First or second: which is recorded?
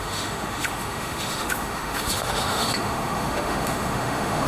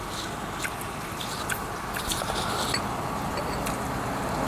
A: second